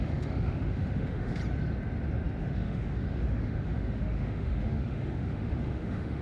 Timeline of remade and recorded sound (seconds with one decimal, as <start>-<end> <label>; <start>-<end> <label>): 0.0-1.4 remade; 1.4-2.4 recorded; 2.4-6.2 remade